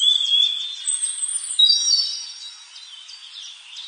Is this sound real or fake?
real